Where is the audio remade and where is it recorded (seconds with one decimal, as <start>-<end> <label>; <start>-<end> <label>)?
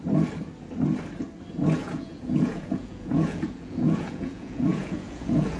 0.0-1.8 recorded; 1.8-5.6 remade